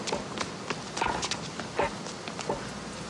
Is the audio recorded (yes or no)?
yes